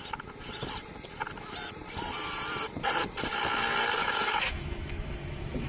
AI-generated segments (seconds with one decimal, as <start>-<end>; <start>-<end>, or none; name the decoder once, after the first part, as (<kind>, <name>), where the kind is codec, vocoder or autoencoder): 4.0-5.7 (autoencoder, DAC-VAE)